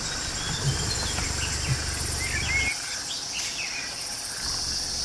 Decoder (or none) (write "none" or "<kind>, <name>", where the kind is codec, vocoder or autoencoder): none